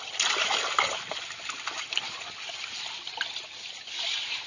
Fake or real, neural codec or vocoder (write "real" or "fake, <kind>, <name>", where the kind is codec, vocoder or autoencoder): real